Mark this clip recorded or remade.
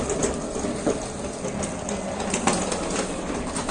recorded